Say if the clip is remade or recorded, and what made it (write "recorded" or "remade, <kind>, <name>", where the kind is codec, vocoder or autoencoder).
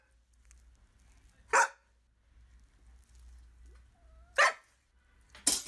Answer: recorded